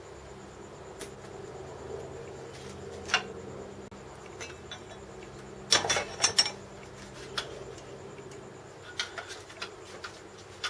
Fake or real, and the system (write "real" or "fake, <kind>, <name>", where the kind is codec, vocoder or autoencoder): real